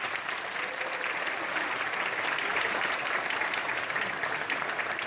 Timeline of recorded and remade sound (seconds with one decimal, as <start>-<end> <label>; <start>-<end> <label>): 0.0-2.5 recorded; 2.5-4.1 remade; 4.1-5.1 recorded